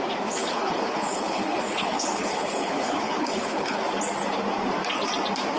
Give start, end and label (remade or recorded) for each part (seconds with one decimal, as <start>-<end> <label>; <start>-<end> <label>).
0.0-0.4 recorded; 0.4-3.8 remade; 3.8-5.6 recorded